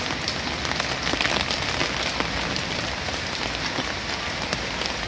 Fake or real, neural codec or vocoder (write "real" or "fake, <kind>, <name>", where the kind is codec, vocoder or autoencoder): real